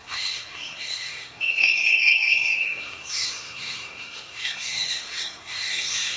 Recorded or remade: remade